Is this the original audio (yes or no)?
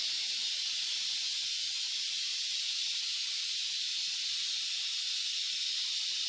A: yes